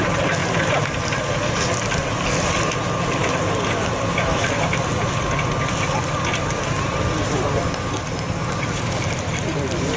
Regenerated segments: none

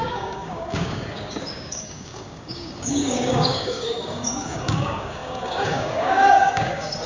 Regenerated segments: 0.0-7.1 (codec, DAC)

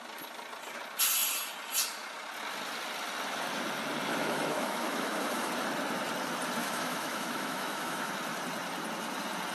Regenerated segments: 4.1-5.5 (autoencoder, DAC-VAE); 6.6-8.1

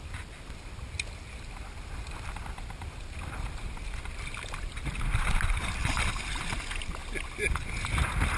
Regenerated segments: none

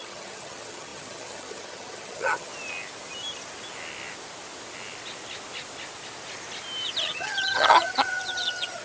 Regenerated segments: 0.0-2.5 (vocoder, HiFi-GAN); 7.0-8.8